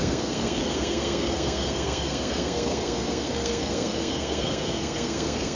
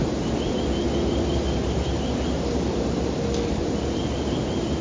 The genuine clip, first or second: second